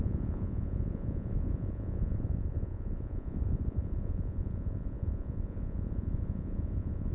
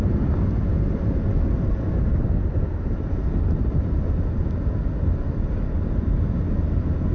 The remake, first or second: first